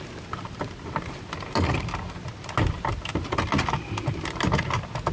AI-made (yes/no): no